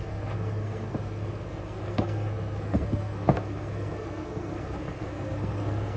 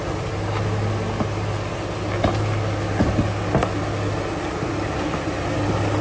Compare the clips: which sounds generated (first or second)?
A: first